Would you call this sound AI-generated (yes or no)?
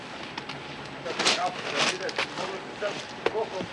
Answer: no